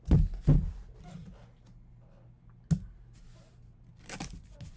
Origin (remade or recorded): recorded